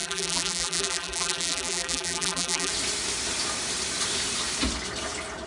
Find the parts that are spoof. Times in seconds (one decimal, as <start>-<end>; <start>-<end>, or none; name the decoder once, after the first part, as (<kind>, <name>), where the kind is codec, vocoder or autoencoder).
0.0-2.7 (vocoder, BigVGAN v2)